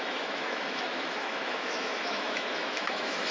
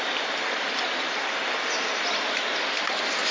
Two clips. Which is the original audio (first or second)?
second